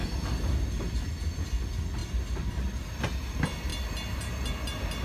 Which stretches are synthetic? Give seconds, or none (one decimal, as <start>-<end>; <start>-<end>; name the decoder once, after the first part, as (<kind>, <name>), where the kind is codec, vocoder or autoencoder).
none

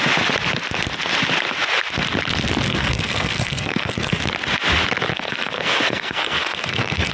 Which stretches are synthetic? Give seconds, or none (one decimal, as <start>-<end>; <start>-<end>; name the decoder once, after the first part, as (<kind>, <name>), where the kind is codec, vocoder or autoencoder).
2.7-4.2 (codec, SNAC); 5.1-7.1

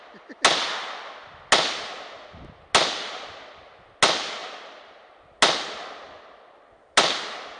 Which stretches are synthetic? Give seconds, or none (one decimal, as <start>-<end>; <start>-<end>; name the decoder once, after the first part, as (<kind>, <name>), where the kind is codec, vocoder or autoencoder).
none

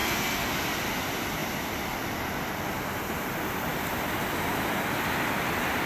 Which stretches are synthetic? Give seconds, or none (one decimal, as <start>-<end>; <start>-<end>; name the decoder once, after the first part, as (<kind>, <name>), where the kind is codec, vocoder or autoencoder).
0.0-0.5 (codec, SNAC)

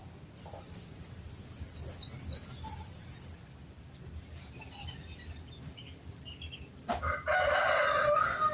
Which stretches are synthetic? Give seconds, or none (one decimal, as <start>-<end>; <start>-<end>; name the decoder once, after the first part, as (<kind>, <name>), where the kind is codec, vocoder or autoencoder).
none

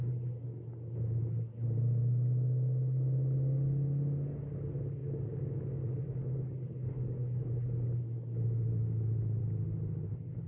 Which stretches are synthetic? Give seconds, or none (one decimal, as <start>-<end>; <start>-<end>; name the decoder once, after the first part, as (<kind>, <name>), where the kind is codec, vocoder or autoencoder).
none

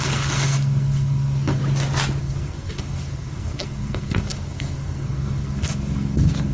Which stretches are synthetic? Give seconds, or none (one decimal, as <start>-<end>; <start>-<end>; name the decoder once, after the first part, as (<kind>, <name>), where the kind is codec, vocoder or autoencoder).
0.0-1.6 (codec, SNAC); 2.2-6.5